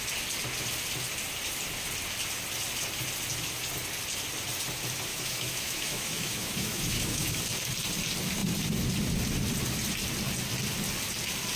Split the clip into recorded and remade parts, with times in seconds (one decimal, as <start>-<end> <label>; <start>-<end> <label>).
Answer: 0.0-5.1 recorded; 5.1-7.4 remade; 7.4-11.6 recorded